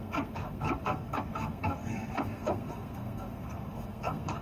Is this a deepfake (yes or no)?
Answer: yes